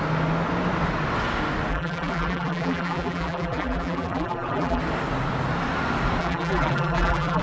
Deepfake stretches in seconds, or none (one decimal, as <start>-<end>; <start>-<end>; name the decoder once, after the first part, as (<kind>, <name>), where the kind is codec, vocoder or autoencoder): 1.7-4.8 (vocoder, BigVGAN v2); 6.2-7.4